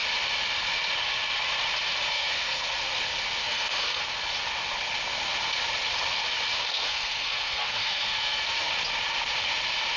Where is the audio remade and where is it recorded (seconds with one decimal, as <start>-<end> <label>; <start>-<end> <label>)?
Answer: 0.0-2.1 recorded; 2.1-2.7 remade; 2.7-3.4 recorded; 3.4-4.0 remade; 4.0-6.5 recorded; 6.5-8.7 remade; 8.7-10.0 recorded